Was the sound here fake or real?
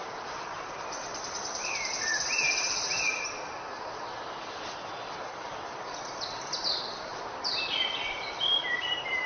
fake